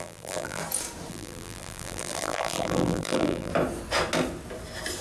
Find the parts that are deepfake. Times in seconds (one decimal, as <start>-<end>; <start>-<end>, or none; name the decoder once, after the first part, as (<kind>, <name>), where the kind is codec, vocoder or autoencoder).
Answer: 0.0-0.6 (vocoder, BigVGAN v2); 1.1-3.5